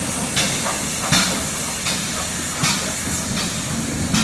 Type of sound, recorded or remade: recorded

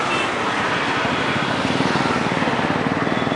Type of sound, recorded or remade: recorded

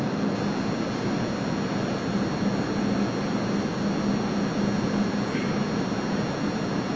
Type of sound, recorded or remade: recorded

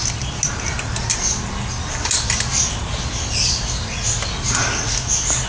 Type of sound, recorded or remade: recorded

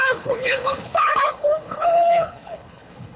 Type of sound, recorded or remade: remade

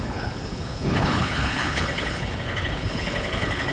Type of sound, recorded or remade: remade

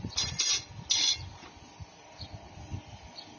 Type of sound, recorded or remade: recorded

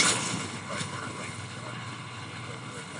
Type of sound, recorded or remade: remade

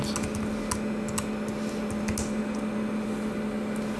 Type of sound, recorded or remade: recorded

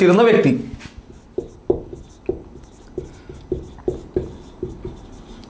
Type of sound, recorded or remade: recorded